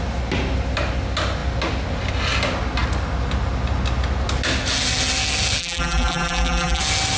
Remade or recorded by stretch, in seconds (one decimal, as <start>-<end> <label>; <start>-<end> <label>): 0.0-5.6 recorded; 5.6-6.8 remade; 6.8-7.2 recorded